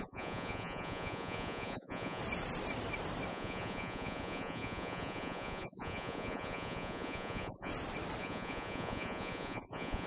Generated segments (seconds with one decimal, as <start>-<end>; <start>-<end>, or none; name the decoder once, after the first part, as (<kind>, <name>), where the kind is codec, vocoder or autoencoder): 0.0-2.2 (vocoder, Vocos); 3.3-7.7; 8.2-10.1